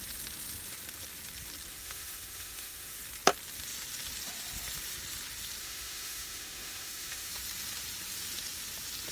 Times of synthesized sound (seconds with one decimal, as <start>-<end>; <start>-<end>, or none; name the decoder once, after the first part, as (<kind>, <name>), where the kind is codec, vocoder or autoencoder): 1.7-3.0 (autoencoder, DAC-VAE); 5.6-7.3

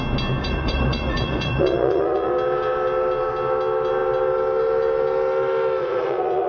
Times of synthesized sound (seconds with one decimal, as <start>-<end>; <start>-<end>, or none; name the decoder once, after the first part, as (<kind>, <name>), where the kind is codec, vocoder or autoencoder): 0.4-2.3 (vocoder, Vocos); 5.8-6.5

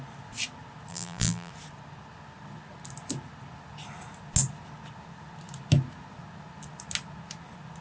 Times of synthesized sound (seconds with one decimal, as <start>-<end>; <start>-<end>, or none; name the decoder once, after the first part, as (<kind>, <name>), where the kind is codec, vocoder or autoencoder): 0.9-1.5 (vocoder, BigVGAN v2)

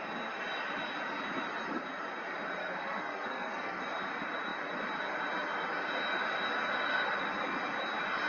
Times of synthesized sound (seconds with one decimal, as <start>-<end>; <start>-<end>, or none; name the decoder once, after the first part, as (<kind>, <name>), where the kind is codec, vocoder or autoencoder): 2.6-3.8 (codec, SNAC)